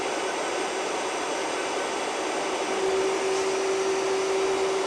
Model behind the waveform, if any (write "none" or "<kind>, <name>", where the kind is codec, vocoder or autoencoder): none